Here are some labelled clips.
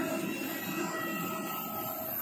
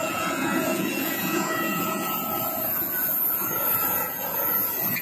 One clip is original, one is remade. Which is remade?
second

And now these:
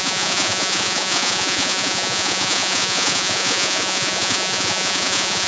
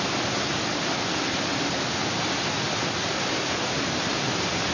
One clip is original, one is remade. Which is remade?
first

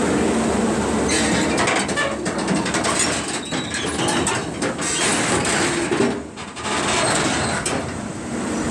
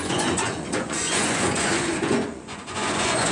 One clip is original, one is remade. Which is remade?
second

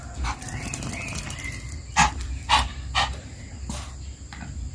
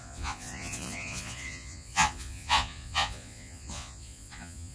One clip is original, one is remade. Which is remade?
second